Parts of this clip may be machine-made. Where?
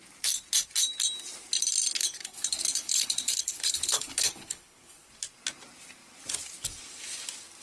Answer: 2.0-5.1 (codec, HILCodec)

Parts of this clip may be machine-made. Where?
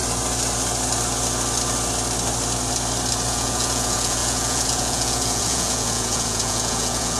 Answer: 3.3-7.2 (vocoder, Vocos)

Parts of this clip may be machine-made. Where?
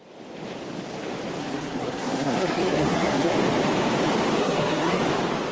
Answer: 1.4-3.3 (codec, SNAC); 4.4-5.0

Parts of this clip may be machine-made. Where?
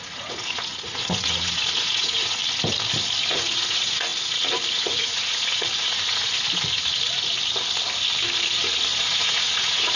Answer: 0.0-2.4 (vocoder, Vocos); 3.2-4.1; 4.7-6.3; 9.0-10.0